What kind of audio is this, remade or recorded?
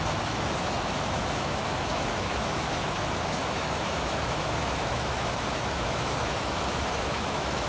remade